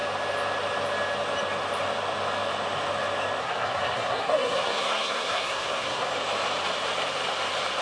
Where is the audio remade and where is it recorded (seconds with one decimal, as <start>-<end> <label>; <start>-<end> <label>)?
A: 0.0-3.4 recorded; 3.4-6.1 remade; 6.1-7.8 recorded